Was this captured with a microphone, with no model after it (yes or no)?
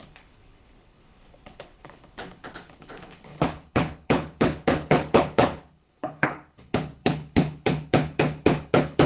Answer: no